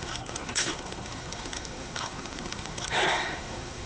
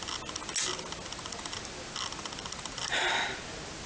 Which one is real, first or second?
second